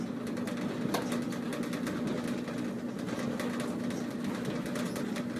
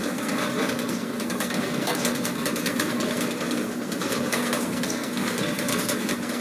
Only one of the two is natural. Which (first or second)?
first